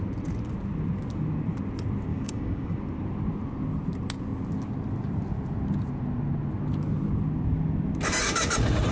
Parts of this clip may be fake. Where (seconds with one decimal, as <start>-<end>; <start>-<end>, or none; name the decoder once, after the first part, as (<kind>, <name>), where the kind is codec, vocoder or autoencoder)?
2.1-2.8 (codec, DAC)